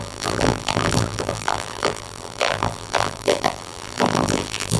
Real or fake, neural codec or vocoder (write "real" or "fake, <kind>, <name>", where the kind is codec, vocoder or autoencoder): fake, vocoder, BigVGAN v2